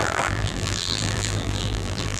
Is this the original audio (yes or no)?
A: no